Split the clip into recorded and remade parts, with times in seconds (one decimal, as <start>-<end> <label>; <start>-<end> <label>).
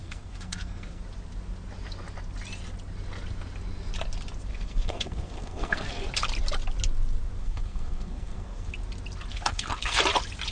0.0-1.0 remade; 1.0-4.5 recorded; 4.5-6.1 remade; 6.1-7.4 recorded; 7.4-8.7 remade; 8.7-9.3 recorded; 9.3-10.0 remade; 10.0-10.5 recorded